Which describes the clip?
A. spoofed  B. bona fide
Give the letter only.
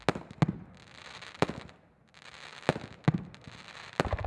B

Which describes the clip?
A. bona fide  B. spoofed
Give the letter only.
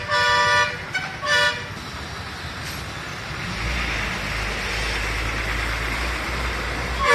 A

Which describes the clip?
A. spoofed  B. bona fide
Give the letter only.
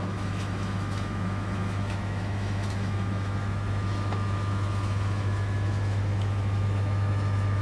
A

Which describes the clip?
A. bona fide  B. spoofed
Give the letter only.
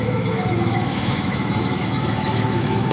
B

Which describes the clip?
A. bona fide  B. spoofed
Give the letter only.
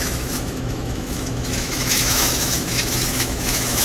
B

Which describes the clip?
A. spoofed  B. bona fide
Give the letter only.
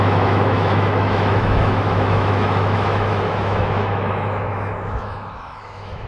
A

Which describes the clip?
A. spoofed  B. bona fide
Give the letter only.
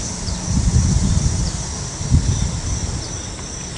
B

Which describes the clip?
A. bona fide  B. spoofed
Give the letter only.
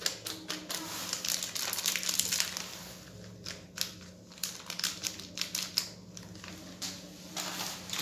A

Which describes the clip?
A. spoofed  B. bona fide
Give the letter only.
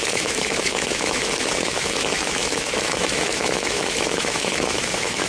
A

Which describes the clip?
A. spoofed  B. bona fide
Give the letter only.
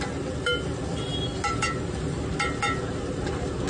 B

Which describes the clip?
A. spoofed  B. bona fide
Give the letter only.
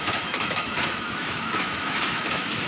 A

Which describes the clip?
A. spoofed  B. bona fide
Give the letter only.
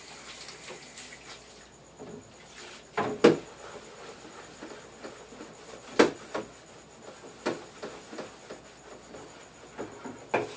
B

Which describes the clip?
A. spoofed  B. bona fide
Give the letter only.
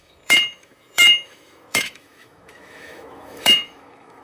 A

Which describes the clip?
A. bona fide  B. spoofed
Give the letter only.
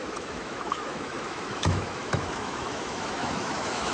B